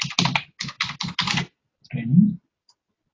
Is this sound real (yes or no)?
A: yes